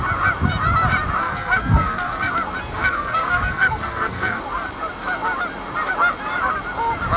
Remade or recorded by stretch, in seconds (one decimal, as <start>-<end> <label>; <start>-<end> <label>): 0.0-1.2 recorded; 1.2-2.3 remade; 2.3-2.8 recorded; 2.8-4.4 remade; 4.4-7.2 recorded